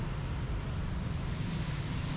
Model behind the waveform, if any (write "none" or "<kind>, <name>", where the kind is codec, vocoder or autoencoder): none